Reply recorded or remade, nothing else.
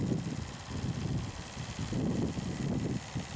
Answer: recorded